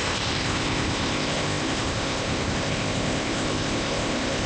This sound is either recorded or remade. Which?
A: remade